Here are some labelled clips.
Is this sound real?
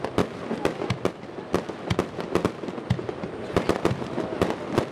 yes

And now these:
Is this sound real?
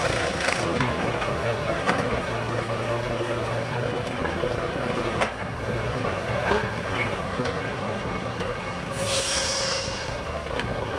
no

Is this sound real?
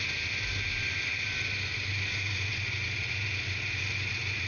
yes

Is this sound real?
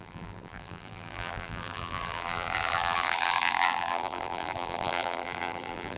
no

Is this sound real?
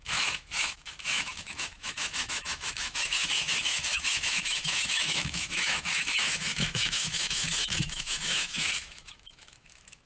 no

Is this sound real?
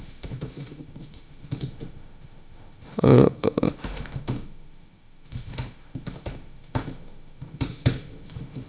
no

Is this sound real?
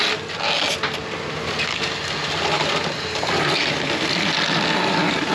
yes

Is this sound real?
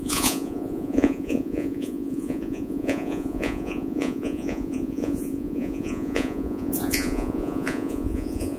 no